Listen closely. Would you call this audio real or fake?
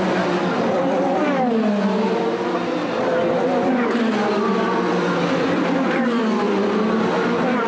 real